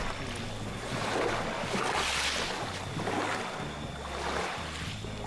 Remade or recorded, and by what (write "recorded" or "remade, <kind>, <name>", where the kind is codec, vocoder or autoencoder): recorded